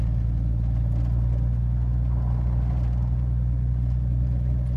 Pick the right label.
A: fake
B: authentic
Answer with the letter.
B